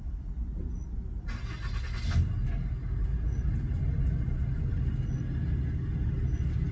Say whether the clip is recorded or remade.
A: recorded